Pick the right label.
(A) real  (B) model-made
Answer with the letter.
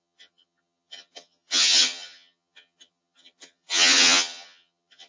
B